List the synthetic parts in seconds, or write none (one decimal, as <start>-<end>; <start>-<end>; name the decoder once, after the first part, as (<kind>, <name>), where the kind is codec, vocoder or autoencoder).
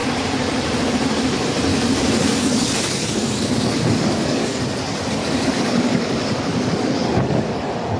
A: 1.7-4.6 (codec, DAC); 5.2-7.6